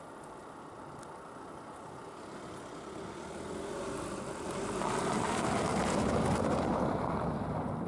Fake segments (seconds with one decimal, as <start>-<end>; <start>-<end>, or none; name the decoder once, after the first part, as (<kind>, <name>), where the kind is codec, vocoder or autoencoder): none